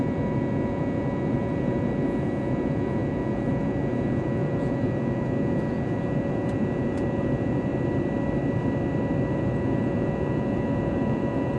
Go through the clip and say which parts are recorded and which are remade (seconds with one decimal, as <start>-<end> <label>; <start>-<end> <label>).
0.0-7.7 remade; 7.7-9.3 recorded; 9.3-11.6 remade